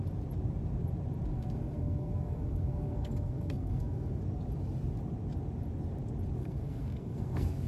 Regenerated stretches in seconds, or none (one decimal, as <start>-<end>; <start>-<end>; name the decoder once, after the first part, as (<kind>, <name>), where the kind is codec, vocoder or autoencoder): 1.3-4.2 (codec, SNAC); 6.4-7.7